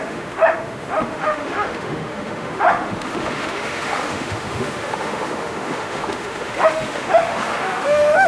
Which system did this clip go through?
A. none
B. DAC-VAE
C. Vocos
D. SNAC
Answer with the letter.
B